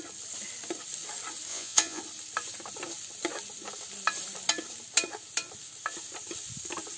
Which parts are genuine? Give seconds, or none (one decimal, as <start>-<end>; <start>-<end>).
0.0-1.5; 2.0-7.0

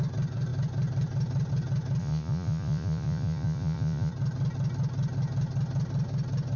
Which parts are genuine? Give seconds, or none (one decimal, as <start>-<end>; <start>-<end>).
0.0-2.0; 4.1-6.6